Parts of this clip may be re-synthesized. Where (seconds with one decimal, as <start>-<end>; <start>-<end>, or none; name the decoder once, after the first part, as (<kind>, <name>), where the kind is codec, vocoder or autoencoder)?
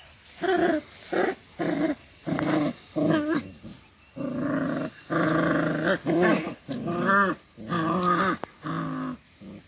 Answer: none